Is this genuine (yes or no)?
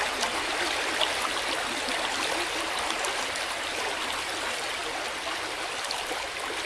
yes